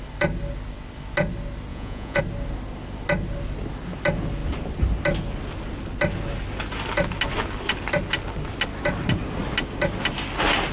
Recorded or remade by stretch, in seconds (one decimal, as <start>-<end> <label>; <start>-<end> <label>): 0.0-1.7 recorded; 1.7-2.2 remade; 2.2-10.7 recorded